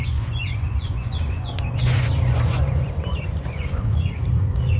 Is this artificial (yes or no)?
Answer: yes